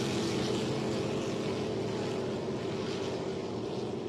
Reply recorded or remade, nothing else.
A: recorded